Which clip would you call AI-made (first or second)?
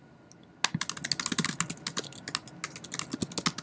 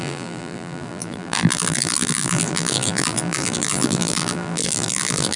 second